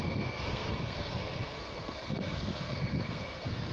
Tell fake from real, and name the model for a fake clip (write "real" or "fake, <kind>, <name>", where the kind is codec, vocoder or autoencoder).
fake, codec, SNAC